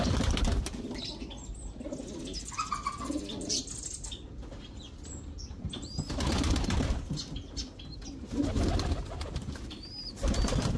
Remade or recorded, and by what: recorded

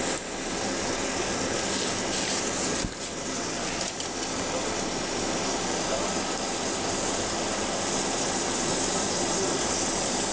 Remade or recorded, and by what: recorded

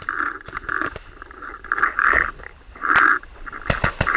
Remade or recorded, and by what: recorded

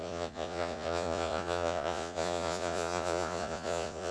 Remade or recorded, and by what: remade, vocoder, Vocos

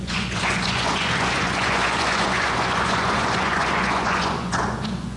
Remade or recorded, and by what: remade, vocoder, Vocos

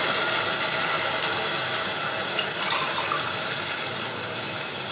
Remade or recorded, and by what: recorded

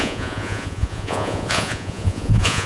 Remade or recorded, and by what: remade, vocoder, Vocos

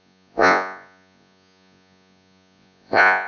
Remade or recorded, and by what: remade, vocoder, Vocos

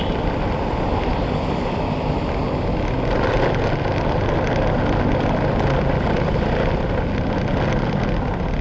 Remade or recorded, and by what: recorded